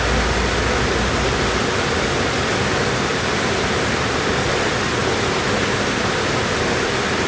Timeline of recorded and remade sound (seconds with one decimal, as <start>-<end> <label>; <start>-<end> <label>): 0.0-3.1 recorded; 3.1-4.3 remade; 4.3-7.3 recorded

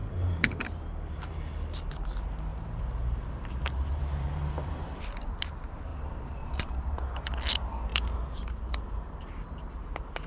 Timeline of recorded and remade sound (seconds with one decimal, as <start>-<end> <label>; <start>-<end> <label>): 0.0-1.3 remade; 1.3-2.5 recorded; 2.5-5.0 remade; 5.0-5.9 recorded; 5.9-7.3 remade; 7.3-7.9 recorded; 7.9-9.3 remade; 9.3-10.3 recorded

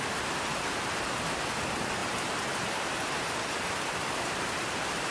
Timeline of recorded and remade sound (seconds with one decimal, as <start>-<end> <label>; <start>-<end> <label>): 0.0-0.5 remade; 0.5-1.3 recorded; 1.3-2.0 remade; 2.0-3.9 recorded; 3.9-5.1 remade

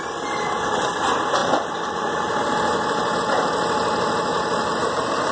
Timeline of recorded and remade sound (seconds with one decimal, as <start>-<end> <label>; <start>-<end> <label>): 0.0-1.4 recorded; 1.4-2.4 remade; 2.4-4.3 recorded; 4.3-5.3 remade